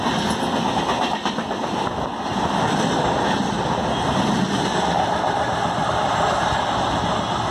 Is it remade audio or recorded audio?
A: recorded